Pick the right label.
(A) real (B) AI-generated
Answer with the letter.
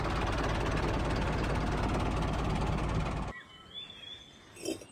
A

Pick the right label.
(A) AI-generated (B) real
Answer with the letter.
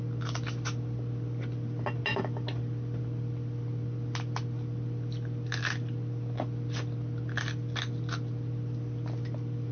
B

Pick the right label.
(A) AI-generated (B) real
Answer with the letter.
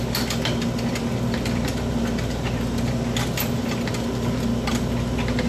B